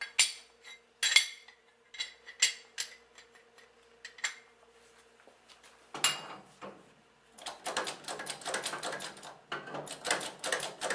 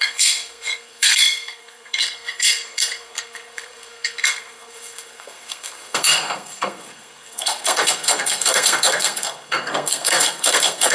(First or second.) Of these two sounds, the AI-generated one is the second